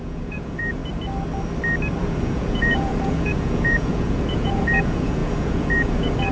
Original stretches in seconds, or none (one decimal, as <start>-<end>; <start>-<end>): 0.8-2.0